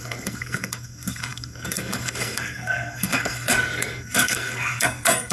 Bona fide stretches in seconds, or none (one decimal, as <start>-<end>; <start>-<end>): none